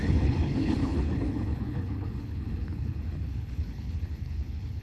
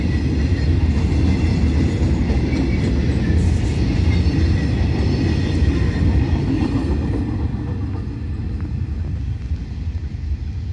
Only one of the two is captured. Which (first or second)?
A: second